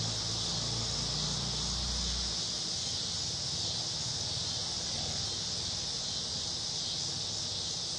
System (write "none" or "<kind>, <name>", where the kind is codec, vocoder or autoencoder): none